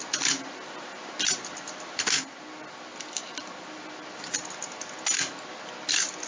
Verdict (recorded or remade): recorded